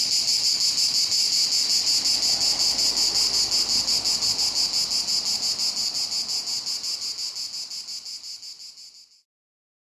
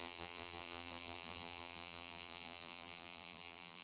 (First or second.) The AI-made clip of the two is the second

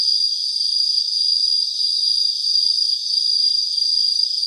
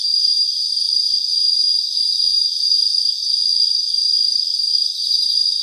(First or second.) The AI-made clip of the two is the second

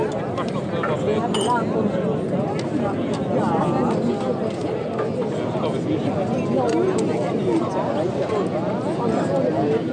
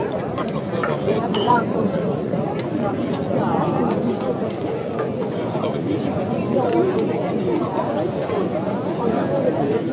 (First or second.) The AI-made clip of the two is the second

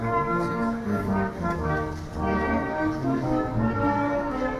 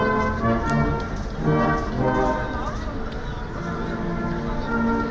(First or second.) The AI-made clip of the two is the first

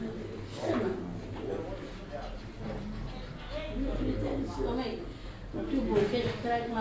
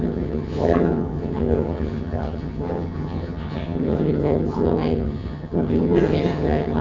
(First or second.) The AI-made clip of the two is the second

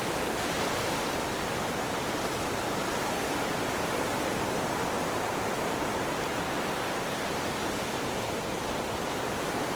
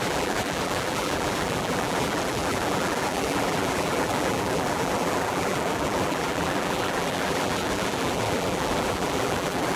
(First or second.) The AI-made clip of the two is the second